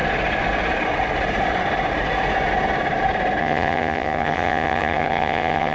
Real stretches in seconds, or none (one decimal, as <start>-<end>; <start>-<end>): 0.0-3.4